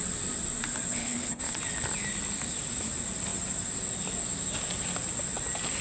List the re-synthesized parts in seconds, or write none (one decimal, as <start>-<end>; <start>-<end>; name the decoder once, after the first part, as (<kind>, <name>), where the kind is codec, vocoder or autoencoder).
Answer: 0.9-1.4 (codec, HILCodec)